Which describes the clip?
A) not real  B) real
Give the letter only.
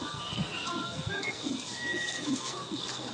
A